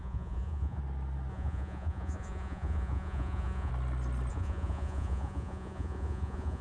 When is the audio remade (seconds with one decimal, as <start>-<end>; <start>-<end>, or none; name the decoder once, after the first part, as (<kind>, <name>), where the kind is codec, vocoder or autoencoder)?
0.0-0.8 (vocoder, Vocos); 1.3-3.7; 4.3-6.6